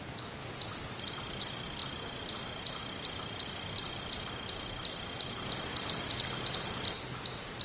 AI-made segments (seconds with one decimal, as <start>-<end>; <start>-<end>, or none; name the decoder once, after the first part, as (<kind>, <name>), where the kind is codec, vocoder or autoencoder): none